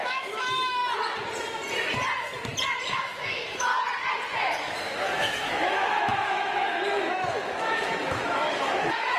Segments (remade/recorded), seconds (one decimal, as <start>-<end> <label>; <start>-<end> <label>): 0.0-0.8 remade; 0.8-2.8 recorded; 2.8-3.7 remade; 3.7-4.6 recorded; 4.6-9.2 remade